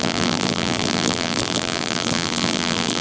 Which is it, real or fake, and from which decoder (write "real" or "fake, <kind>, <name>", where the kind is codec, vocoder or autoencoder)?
fake, vocoder, BigVGAN v2